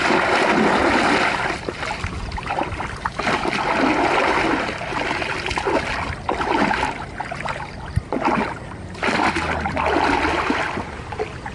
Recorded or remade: recorded